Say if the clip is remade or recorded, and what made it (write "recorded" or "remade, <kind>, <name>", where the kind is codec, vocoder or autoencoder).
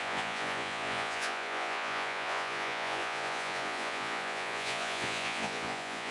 remade, vocoder, Vocos